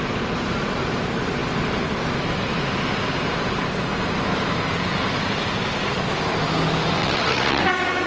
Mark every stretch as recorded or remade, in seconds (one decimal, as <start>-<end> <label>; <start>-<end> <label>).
0.0-7.0 recorded; 7.0-7.6 remade; 7.6-8.1 recorded